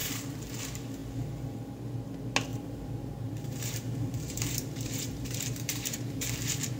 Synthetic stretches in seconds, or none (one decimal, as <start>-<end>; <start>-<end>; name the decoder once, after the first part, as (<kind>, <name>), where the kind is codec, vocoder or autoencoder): 0.0-0.6 (vocoder, BigVGAN v2); 2.5-6.8